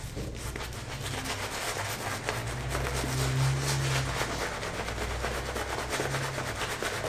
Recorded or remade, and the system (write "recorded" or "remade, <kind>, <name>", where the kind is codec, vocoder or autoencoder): recorded